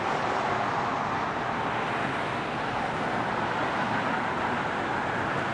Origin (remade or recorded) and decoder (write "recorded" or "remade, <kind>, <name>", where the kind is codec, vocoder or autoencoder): recorded